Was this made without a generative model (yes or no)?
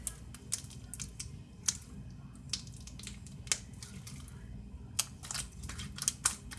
yes